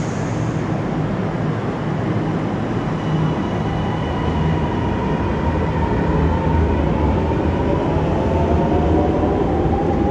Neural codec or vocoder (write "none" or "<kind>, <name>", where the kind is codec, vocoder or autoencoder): none